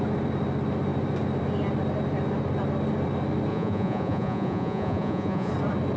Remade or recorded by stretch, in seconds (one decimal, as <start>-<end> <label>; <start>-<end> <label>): 0.0-3.5 recorded; 3.5-5.5 remade; 5.5-6.0 recorded